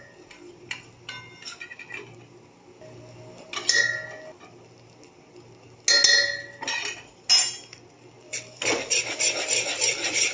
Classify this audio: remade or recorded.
recorded